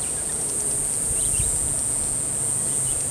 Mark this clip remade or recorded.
recorded